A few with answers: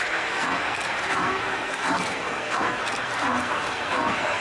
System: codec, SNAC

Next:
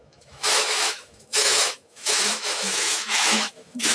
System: autoencoder, DAC-VAE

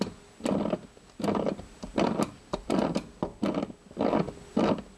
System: none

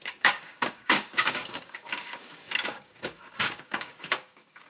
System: codec, DAC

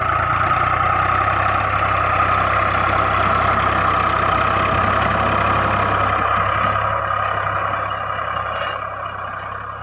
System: none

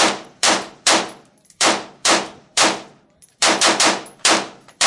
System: vocoder, BigVGAN v2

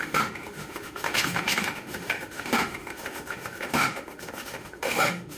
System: autoencoder, DAC-VAE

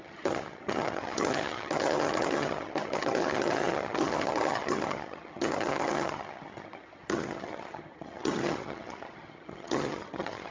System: vocoder, HiFi-GAN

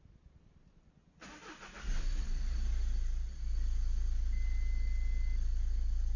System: none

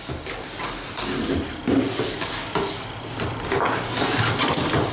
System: none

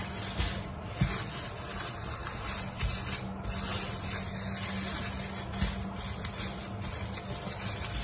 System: none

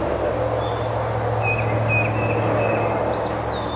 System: none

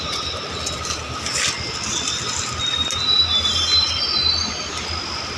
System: none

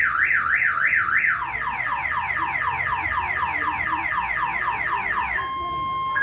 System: none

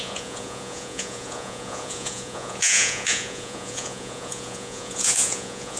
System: vocoder, Vocos